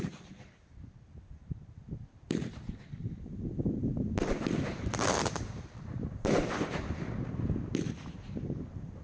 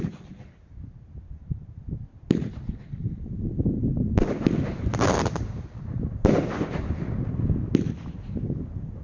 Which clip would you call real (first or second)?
second